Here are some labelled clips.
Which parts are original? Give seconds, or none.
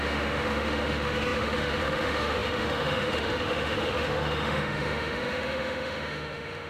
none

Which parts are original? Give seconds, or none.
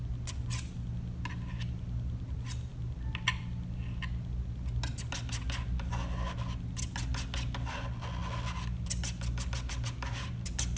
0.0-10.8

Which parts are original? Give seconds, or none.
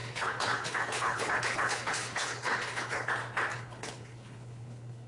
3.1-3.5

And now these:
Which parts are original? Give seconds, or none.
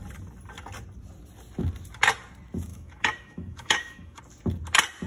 0.0-2.7; 4.2-5.1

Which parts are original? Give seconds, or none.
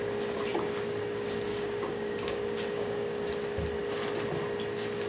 0.0-1.5; 3.3-5.1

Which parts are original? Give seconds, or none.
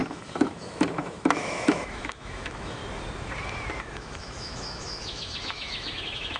2.8-3.8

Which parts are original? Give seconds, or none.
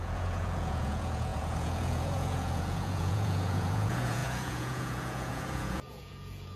none